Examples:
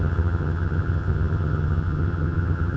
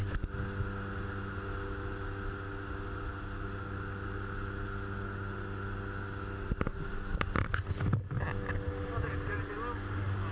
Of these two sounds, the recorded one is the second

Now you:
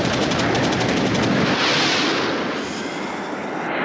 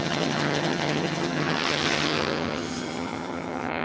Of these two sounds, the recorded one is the first